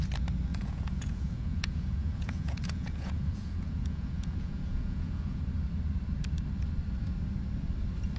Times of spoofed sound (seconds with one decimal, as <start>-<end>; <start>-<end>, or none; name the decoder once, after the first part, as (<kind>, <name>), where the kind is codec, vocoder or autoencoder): 0.5-5.4 (vocoder, Vocos)